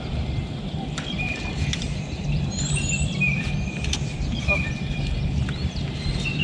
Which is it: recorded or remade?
remade